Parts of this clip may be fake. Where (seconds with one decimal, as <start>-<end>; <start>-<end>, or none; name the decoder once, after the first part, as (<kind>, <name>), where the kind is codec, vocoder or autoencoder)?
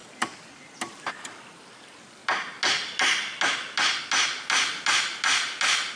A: none